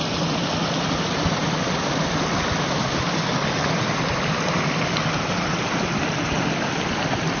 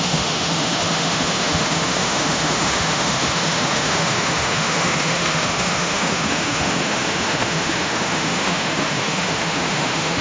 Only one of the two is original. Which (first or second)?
first